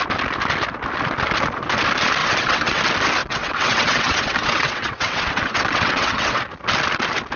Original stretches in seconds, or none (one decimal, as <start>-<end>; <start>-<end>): 0.0-2.2; 2.8-3.2; 6.4-7.4